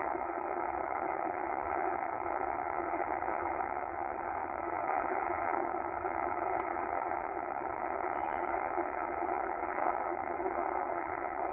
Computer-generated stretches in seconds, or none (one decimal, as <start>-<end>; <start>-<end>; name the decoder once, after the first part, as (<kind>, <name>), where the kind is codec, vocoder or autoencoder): 0.0-11.5 (vocoder, WaveNeXt)